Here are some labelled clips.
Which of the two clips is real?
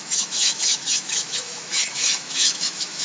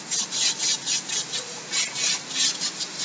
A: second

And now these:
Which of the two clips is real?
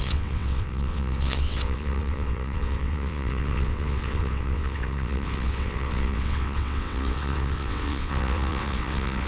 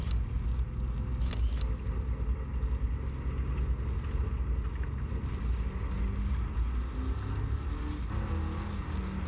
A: second